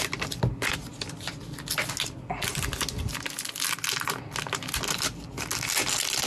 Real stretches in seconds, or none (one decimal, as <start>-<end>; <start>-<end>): 0.0-6.3